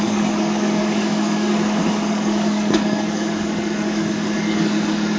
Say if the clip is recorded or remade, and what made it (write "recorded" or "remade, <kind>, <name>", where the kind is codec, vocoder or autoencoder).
remade, codec, DAC